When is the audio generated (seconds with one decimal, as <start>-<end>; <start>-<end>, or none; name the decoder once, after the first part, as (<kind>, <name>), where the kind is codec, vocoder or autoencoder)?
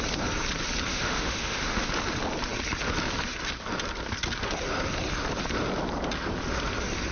0.9-1.9 (autoencoder, DAC-VAE)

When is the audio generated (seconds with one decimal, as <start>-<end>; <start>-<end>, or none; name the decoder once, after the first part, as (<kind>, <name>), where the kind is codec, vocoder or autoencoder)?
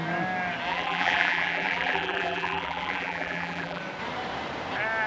0.7-3.8 (vocoder, BigVGAN v2)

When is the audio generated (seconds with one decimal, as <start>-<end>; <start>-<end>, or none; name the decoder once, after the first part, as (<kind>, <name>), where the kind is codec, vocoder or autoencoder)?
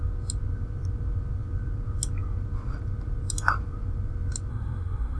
4.5-5.2 (codec, SNAC)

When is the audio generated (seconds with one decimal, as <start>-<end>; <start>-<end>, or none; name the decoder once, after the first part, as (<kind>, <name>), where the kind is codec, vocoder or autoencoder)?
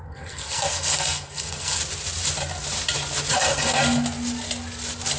0.0-1.8 (codec, SNAC); 3.3-3.8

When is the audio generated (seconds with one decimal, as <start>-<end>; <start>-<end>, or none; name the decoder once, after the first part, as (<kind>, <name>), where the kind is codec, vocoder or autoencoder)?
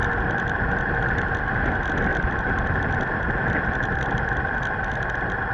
2.1-4.1 (vocoder, BigVGAN v2)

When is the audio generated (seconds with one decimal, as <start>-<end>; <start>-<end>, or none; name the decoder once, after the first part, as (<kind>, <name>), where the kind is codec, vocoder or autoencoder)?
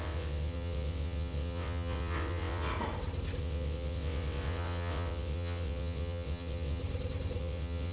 0.0-2.7 (vocoder, WaveNeXt); 3.4-6.8; 7.4-7.9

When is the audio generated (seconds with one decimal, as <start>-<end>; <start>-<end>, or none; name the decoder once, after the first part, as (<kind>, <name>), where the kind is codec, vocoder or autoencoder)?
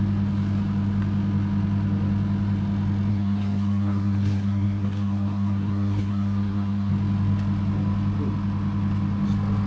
3.1-6.9 (codec, SNAC)